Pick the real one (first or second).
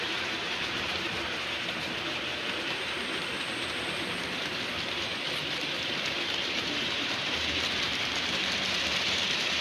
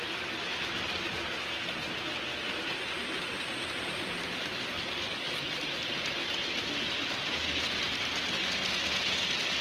second